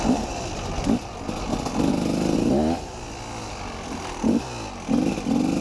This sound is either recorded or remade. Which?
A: recorded